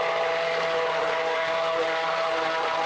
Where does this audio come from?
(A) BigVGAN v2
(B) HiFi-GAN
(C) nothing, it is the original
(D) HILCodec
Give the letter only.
C